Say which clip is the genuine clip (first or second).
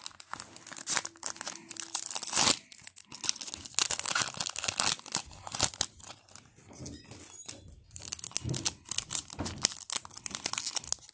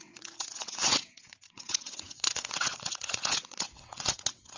first